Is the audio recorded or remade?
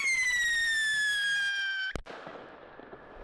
recorded